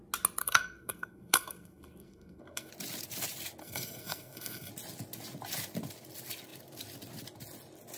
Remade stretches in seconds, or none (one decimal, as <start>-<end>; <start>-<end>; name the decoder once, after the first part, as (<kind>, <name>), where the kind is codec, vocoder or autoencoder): 0.4-2.7 (codec, SNAC); 3.6-4.7